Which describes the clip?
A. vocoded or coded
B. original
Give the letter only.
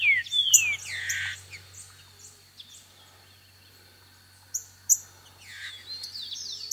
B